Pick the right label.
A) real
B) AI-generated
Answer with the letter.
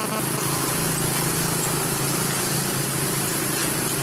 A